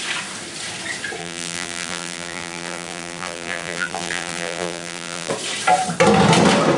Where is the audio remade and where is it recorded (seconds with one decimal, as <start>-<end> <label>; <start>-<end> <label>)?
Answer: 0.0-1.2 recorded; 1.2-5.3 remade; 5.3-6.8 recorded